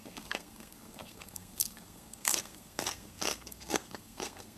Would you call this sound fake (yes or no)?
yes